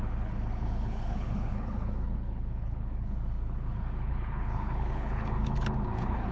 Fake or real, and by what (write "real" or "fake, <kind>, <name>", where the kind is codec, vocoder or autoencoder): fake, codec, HILCodec